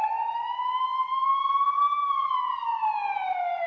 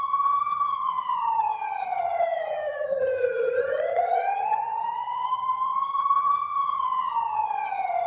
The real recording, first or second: first